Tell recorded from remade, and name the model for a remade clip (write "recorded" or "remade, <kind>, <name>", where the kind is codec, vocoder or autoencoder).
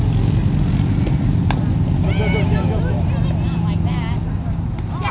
recorded